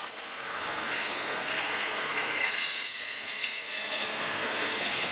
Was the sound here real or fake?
fake